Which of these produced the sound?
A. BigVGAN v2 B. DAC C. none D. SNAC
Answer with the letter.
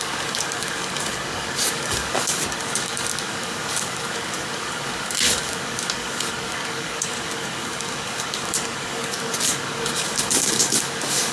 B